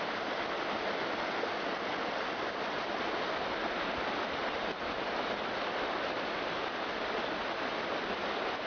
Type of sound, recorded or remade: recorded